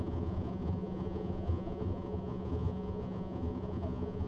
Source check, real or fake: fake